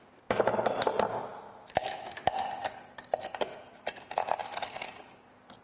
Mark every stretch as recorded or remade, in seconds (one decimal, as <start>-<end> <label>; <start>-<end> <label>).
0.0-1.3 recorded; 1.3-2.7 remade; 2.7-5.6 recorded